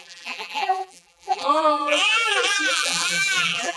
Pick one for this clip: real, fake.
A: fake